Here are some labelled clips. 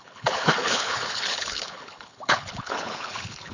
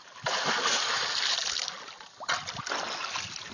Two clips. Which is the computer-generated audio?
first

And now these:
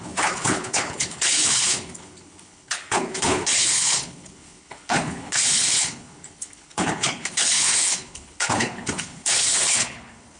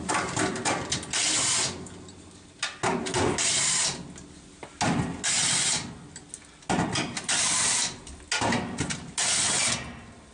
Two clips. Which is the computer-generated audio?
first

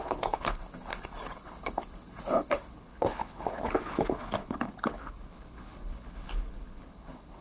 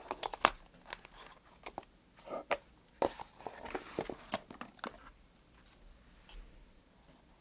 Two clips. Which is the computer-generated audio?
first